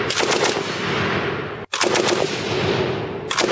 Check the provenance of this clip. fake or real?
real